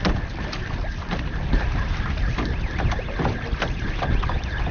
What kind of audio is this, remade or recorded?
recorded